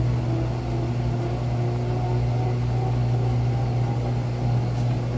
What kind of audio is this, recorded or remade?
recorded